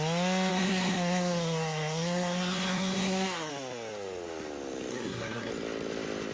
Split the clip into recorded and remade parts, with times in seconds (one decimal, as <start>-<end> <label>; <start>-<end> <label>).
0.0-0.5 recorded; 0.5-3.5 remade; 3.5-4.9 recorded; 4.9-5.5 remade; 5.5-6.3 recorded